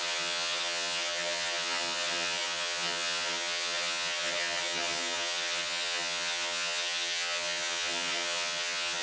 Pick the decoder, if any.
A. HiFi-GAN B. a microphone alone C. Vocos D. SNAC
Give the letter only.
A